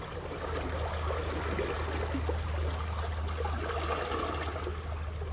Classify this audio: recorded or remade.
recorded